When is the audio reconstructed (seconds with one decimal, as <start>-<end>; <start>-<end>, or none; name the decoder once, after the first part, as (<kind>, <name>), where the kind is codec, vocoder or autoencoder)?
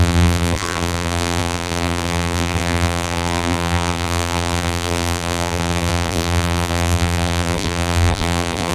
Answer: 0.0-8.7 (vocoder, BigVGAN v2)